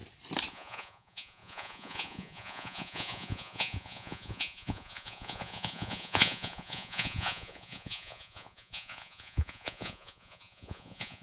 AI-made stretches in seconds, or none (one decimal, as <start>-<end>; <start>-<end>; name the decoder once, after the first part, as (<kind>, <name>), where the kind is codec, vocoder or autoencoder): 0.5-11.2 (vocoder, Vocos)